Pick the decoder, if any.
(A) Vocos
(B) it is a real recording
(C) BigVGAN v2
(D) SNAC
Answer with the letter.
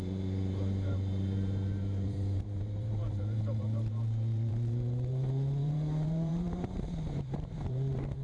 C